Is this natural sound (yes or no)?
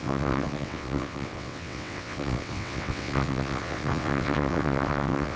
no